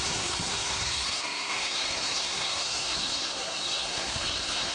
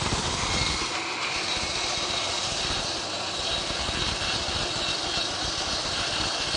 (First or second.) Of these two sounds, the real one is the second